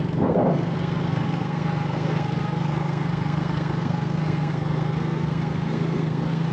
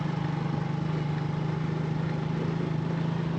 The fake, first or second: first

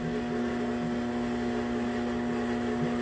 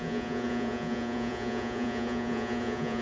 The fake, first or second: second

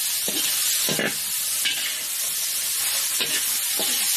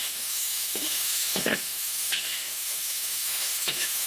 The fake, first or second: second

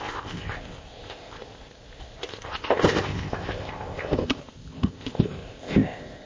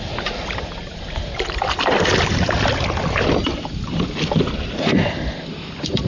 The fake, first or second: first